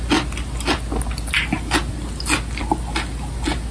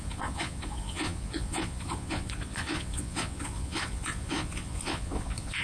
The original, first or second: first